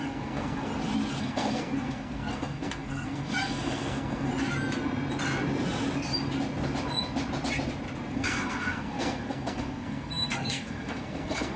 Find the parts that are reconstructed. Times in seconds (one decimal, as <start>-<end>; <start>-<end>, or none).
0.0-0.7; 1.2-4.3; 8.1-11.6